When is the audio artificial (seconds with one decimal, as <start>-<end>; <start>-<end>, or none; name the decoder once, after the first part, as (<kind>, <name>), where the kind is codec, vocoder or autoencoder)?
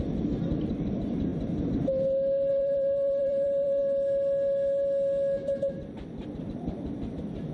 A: 0.0-1.3 (vocoder, BigVGAN v2); 2.5-3.8; 5.7-7.5